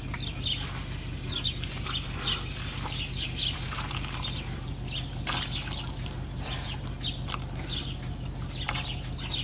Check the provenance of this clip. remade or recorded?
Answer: recorded